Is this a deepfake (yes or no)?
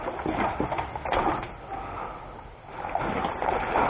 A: no